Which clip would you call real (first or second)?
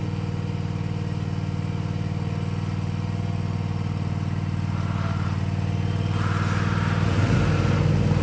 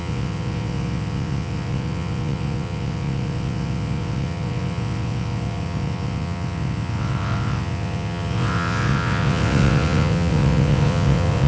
first